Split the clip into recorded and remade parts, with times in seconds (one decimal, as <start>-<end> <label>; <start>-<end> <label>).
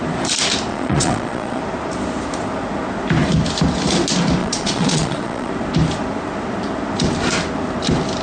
0.0-0.7 recorded; 0.7-1.6 remade; 1.6-4.4 recorded; 4.4-5.5 remade; 5.5-8.2 recorded